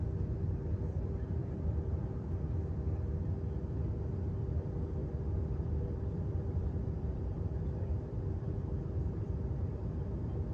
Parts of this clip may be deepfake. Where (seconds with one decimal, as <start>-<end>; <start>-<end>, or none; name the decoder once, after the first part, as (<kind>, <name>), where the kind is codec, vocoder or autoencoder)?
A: 1.4-2.4 (vocoder, BigVGAN v2); 5.0-10.1